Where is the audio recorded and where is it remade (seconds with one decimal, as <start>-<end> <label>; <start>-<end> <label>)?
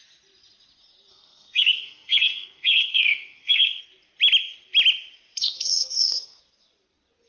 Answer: 0.0-1.1 recorded; 1.1-3.8 remade; 3.8-5.4 recorded; 5.4-6.4 remade; 6.4-7.3 recorded